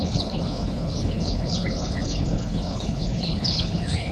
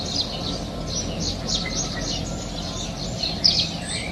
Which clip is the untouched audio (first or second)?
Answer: second